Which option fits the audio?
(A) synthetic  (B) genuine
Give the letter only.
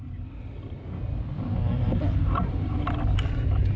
B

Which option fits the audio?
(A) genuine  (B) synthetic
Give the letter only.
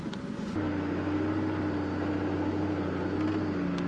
A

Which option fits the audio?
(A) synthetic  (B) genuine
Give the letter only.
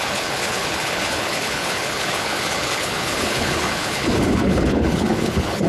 A